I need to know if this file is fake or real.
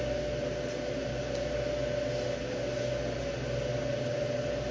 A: real